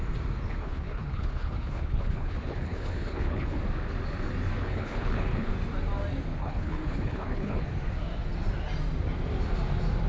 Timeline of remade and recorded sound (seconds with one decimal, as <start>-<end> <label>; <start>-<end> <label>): 0.0-0.6 recorded; 0.6-3.6 remade; 3.6-4.6 recorded; 4.6-5.5 remade; 5.5-6.4 recorded; 6.4-7.6 remade; 7.6-10.1 recorded